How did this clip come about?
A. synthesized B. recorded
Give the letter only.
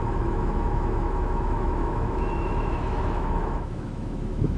A